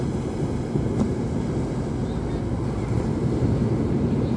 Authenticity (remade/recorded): recorded